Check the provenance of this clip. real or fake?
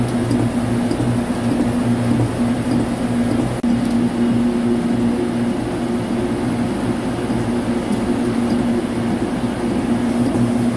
real